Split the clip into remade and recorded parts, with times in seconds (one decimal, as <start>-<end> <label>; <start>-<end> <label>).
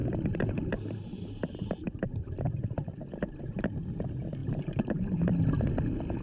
0.0-3.7 remade; 3.7-6.2 recorded